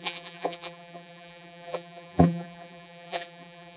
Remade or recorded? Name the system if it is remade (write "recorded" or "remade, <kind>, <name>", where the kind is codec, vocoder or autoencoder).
remade, vocoder, BigVGAN v2